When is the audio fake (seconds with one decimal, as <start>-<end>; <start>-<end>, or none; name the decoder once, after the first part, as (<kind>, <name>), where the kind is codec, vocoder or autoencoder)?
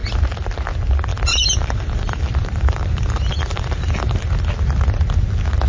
1.1-4.5 (vocoder, BigVGAN v2)